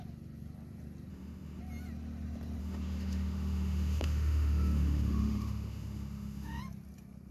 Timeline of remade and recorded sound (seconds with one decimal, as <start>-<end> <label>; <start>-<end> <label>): 0.0-1.1 recorded; 1.1-1.6 remade; 1.6-2.6 recorded; 2.6-6.6 remade; 6.6-7.3 recorded